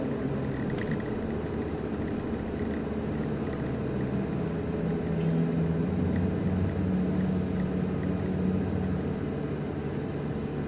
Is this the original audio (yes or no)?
yes